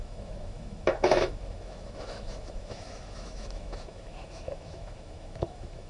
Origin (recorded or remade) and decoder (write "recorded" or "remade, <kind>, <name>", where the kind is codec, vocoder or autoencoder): remade, autoencoder, DAC-VAE